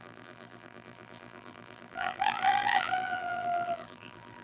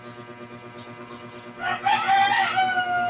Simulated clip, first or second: first